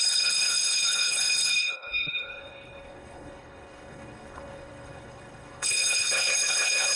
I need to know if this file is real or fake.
fake